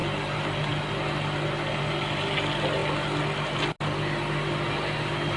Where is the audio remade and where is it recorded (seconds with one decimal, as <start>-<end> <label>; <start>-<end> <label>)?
0.0-5.4 recorded